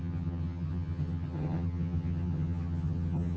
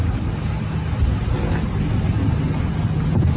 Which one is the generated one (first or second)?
first